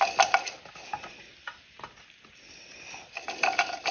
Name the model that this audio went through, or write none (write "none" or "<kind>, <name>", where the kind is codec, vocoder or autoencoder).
vocoder, BigVGAN v2